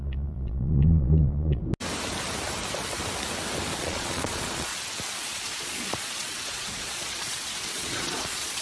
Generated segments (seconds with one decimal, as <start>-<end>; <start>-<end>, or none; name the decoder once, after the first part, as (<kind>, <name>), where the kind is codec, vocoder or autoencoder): 0.0-1.6 (vocoder, Vocos); 3.8-4.7; 5.2-8.6